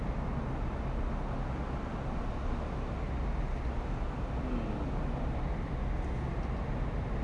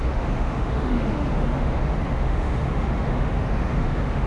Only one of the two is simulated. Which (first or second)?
second